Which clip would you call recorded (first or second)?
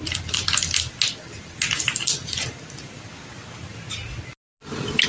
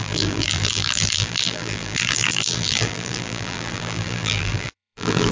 first